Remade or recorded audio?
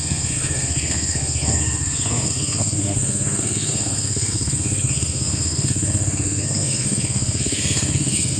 remade